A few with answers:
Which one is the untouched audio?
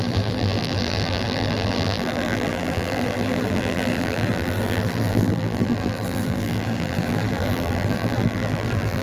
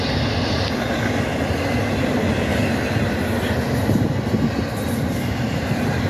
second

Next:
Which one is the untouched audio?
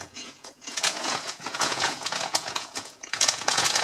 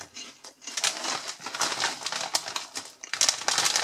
second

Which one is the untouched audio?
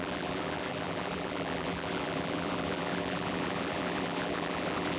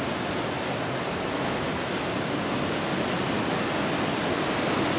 second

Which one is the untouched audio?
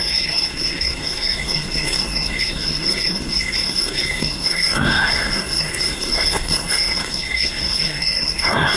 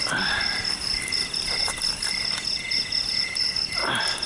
second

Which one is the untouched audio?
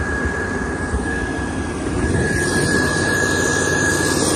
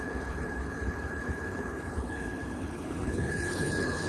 first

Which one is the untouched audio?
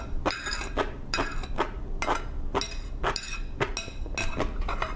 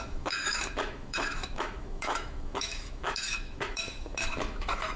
first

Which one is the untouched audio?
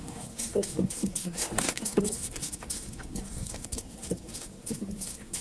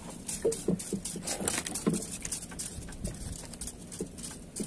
second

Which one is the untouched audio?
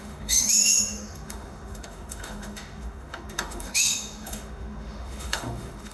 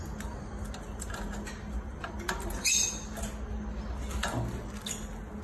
second